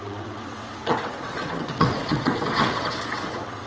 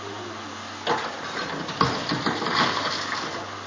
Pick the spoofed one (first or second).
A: first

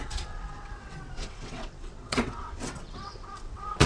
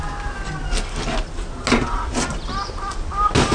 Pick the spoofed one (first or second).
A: first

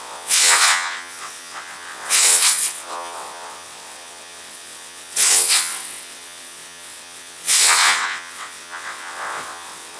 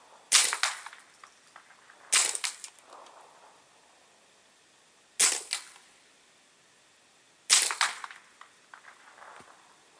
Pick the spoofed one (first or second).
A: first